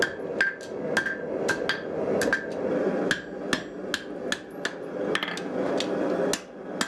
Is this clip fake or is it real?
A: real